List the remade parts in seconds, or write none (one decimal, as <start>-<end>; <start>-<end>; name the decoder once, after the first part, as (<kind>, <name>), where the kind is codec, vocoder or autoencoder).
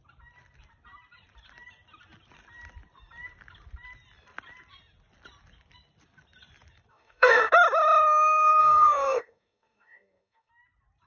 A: 6.9-7.5 (codec, DAC); 8.6-10.5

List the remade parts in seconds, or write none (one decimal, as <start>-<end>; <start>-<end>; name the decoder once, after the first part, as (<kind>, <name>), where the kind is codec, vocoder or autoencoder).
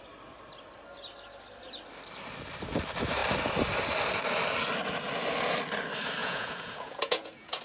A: 6.2-7.6 (vocoder, Vocos)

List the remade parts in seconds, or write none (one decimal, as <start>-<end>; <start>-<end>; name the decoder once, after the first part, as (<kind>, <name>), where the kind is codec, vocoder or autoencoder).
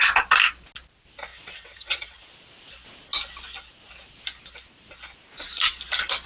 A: 1.3-2.3 (vocoder, WaveNeXt)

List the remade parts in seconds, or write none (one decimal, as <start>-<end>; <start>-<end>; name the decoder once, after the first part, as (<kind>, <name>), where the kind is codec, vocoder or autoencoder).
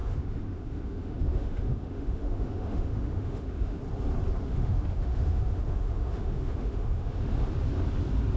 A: 0.0-3.8 (autoencoder, DAC-VAE); 4.5-7.2